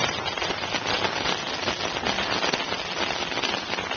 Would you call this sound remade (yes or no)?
no